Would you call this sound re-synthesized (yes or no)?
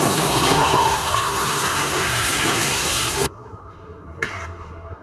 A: yes